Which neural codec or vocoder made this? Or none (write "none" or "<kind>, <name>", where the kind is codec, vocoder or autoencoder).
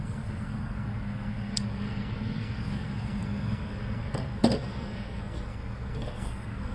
codec, SNAC